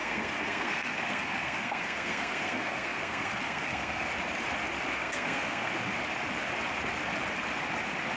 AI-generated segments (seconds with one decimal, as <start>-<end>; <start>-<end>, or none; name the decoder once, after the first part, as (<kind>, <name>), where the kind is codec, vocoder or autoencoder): 0.0-4.1 (codec, SNAC); 5.0-5.7